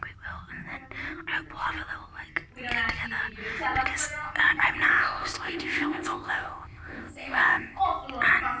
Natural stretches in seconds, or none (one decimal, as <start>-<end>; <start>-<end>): 0.0-4.9; 7.8-8.6